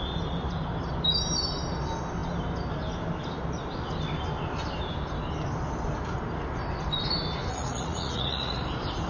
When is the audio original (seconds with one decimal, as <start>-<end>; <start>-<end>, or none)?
0.0-7.5; 8.6-9.1